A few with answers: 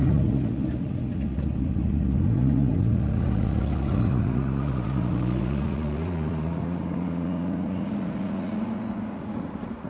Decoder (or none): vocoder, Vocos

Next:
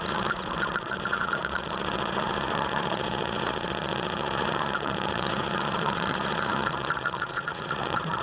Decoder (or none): vocoder, Vocos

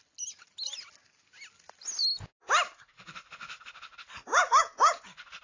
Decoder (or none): none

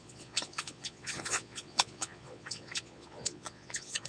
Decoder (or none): vocoder, Vocos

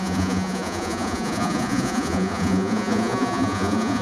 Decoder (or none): vocoder, Vocos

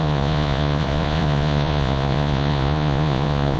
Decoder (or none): vocoder, Vocos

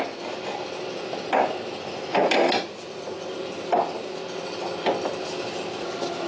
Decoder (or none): none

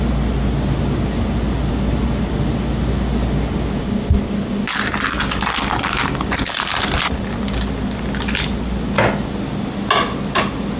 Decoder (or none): none